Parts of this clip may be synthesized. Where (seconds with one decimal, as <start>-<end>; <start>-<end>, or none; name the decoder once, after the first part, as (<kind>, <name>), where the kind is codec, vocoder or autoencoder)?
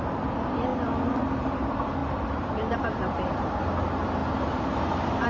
0.0-0.7 (vocoder, BigVGAN v2); 1.4-5.3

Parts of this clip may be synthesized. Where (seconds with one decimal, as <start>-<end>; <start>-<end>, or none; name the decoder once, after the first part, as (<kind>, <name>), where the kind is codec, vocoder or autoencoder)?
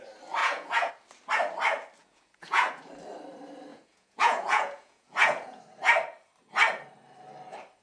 0.4-0.9 (vocoder, Vocos); 2.0-2.7; 3.7-5.6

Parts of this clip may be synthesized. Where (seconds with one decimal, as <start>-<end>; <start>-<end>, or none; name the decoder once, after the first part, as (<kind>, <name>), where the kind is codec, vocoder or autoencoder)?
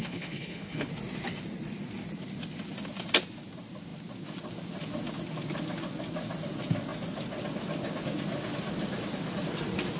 0.0-0.9 (codec, HILCodec)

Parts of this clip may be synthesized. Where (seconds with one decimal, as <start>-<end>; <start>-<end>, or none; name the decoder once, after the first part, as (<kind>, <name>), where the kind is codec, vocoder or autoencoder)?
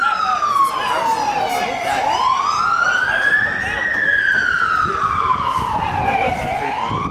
none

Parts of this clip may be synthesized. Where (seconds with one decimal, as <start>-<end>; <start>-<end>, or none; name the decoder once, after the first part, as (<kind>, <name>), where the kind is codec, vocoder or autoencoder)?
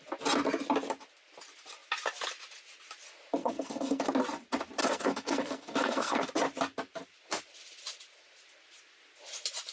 3.4-4.1 (codec, SNAC); 4.8-6.3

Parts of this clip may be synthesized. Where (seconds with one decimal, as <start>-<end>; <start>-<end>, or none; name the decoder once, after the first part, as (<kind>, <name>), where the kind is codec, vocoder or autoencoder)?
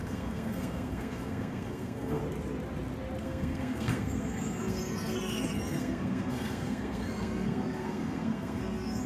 0.0-2.2 (codec, SNAC); 3.2-9.1